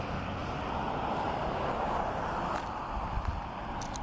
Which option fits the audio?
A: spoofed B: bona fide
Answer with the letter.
B